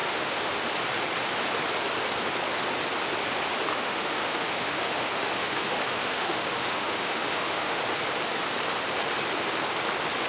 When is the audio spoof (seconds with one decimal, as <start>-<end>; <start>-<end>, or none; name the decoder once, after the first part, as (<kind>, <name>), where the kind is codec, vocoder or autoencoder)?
0.0-0.6 (autoencoder, DAC-VAE); 3.7-7.8